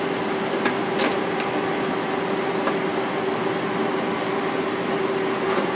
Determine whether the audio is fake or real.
real